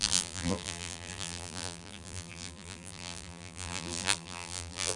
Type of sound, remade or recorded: remade